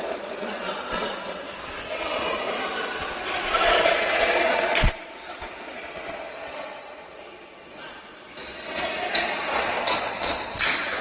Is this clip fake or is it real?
fake